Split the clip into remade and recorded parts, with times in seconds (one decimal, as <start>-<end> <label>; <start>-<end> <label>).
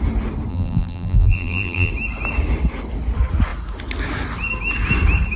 0.0-0.5 recorded; 0.5-1.9 remade; 1.9-5.4 recorded